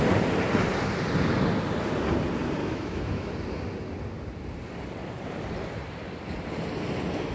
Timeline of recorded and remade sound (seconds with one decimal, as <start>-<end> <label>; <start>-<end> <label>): 0.0-2.6 recorded; 2.6-3.3 remade; 3.3-7.3 recorded